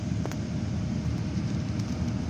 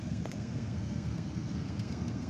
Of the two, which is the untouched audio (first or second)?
first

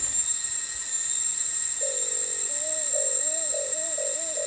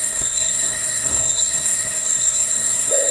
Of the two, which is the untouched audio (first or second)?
first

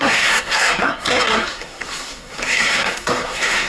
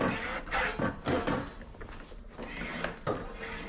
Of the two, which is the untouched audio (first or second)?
second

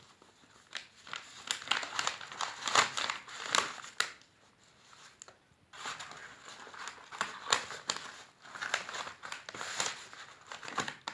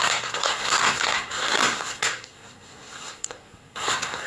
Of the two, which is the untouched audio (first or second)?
first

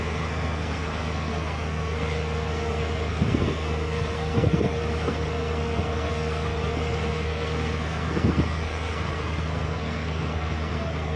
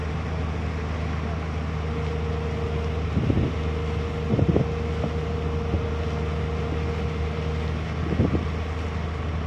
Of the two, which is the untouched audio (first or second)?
second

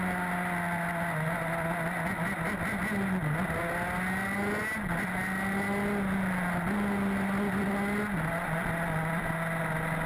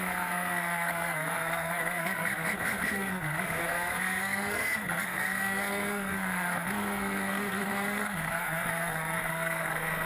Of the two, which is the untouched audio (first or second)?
first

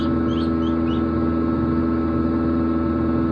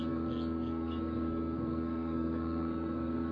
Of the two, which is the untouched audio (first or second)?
first